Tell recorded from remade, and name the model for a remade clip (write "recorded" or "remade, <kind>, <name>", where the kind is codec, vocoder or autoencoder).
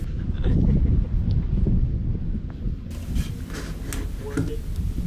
recorded